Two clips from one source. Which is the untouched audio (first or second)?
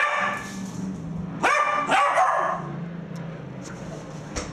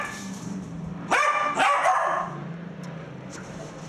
first